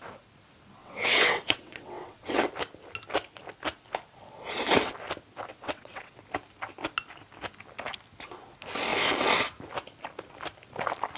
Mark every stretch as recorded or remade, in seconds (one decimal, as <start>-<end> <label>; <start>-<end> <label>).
0.0-0.8 recorded; 0.8-2.5 remade; 2.5-5.5 recorded; 5.5-6.2 remade; 6.2-11.2 recorded